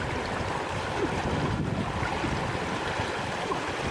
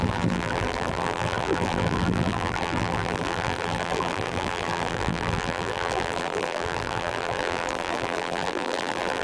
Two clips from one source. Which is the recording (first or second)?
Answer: first